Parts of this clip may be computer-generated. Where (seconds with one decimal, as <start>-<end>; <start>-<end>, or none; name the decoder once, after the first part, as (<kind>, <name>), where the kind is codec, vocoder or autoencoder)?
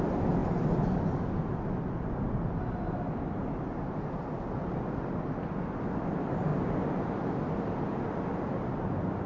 7.9-8.5 (vocoder, BigVGAN v2)